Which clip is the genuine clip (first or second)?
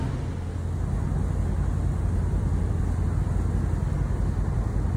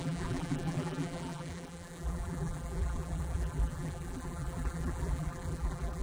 first